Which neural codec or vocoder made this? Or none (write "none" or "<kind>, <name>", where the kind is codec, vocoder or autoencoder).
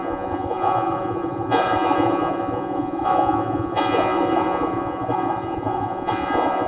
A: vocoder, Vocos